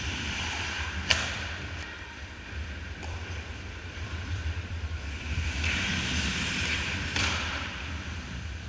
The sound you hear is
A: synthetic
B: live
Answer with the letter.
A